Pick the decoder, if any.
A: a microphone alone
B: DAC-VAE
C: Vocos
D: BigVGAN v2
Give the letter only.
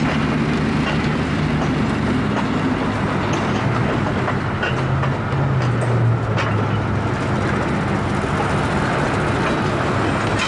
A